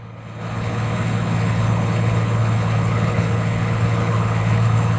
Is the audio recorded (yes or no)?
no